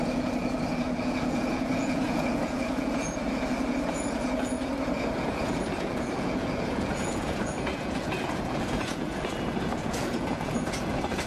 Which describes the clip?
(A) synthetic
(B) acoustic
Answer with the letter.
A